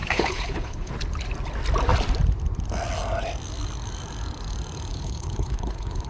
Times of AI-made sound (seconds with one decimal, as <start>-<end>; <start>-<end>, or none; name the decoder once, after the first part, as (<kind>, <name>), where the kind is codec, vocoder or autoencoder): 0.0-0.9 (codec, HILCodec); 4.9-6.1